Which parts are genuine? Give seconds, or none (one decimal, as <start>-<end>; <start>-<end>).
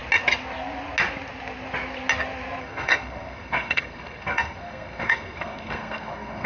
0.0-2.6